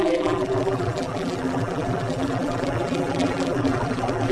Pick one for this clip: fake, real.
fake